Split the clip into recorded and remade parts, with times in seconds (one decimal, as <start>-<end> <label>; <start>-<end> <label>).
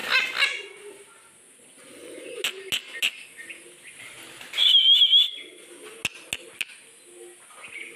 0.0-8.0 recorded